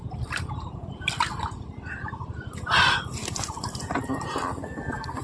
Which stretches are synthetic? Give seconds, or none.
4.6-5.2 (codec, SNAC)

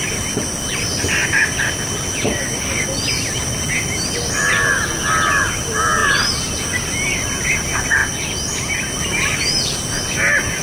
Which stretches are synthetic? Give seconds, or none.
none

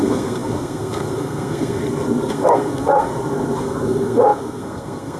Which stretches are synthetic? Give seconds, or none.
0.0-1.8 (codec, SNAC); 2.3-3.1; 3.6-5.2